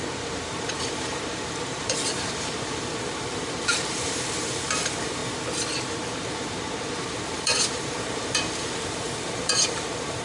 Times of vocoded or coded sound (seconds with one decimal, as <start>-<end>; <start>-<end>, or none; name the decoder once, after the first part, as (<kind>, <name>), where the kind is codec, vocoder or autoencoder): 0.0-5.2 (vocoder, BigVGAN v2); 5.9-10.2